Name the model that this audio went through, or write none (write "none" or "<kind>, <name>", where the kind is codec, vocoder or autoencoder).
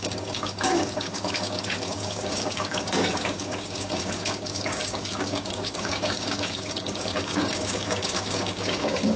codec, DAC